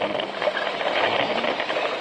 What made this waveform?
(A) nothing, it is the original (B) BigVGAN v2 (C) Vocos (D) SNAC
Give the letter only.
A